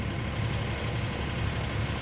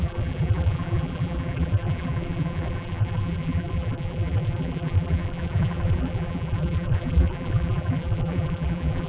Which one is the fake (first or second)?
second